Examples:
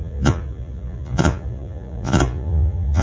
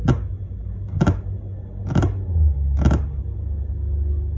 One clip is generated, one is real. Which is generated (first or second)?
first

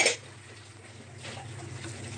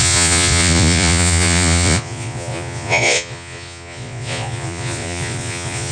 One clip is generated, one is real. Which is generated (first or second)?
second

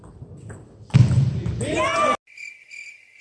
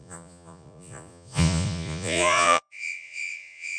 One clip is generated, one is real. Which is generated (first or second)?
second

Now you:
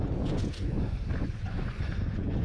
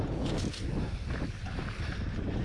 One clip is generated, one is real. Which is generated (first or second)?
first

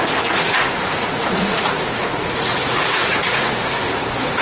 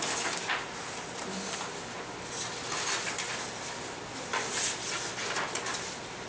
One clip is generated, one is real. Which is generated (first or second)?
first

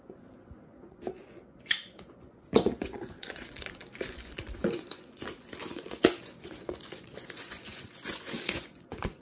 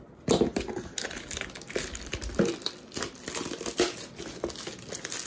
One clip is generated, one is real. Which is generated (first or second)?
first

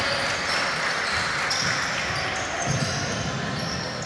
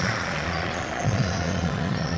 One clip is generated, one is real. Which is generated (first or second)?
second